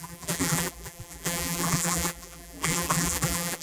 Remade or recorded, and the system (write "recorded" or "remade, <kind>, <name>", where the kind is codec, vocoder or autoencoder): remade, vocoder, BigVGAN v2